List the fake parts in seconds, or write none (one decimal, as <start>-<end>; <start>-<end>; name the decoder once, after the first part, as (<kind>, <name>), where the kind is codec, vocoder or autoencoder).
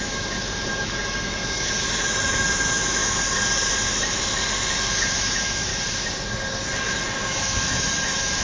0.0-3.0 (autoencoder, DAC-VAE); 5.0-5.7; 7.3-8.4